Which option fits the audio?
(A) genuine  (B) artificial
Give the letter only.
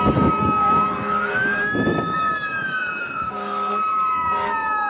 B